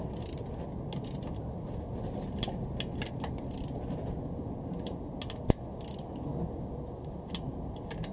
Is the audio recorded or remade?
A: recorded